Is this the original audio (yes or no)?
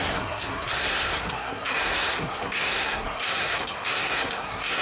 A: no